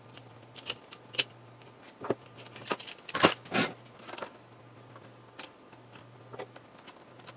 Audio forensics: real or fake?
real